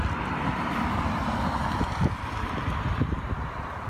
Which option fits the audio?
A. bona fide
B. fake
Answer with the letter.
A